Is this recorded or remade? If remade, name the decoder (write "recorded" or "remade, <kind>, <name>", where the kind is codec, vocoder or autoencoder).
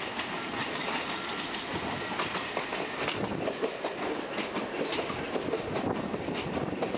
recorded